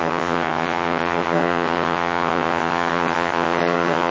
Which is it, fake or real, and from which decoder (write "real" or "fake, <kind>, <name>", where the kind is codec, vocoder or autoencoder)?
fake, vocoder, HiFi-GAN